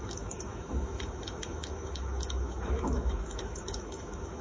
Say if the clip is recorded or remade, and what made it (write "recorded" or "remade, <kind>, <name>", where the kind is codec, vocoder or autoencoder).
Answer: remade, autoencoder, DAC-VAE